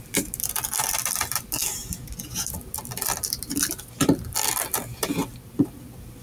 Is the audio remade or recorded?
recorded